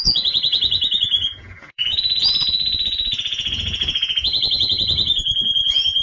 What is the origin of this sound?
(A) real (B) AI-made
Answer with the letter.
B